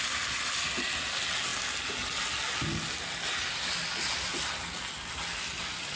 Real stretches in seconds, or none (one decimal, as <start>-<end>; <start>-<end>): 0.0-6.0